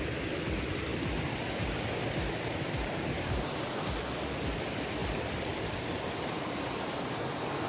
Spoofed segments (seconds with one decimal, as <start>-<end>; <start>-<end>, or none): none